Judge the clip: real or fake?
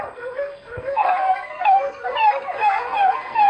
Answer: fake